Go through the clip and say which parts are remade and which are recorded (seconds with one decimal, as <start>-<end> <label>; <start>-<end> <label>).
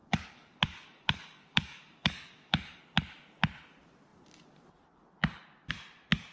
0.0-2.8 remade; 2.8-6.3 recorded